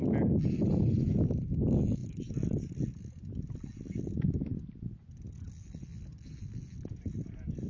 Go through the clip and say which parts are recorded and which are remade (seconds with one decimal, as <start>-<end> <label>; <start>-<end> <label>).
0.0-7.7 recorded